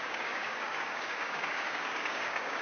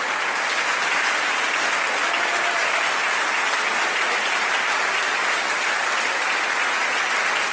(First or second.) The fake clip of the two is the first